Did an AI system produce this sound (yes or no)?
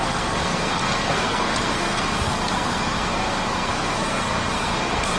yes